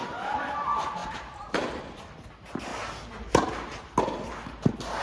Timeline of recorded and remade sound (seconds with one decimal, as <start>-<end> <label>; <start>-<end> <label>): 0.0-5.0 recorded